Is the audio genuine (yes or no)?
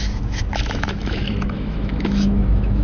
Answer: no